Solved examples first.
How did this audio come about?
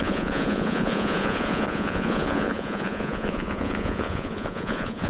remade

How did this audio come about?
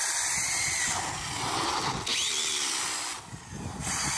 recorded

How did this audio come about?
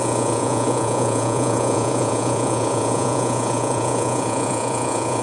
remade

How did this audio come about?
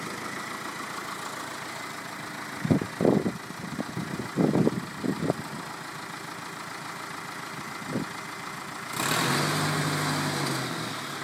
recorded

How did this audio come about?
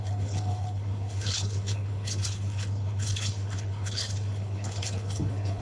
remade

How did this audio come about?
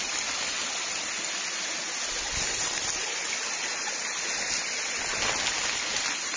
recorded